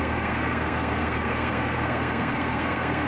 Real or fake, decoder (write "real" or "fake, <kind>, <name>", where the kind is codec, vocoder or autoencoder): fake, codec, SNAC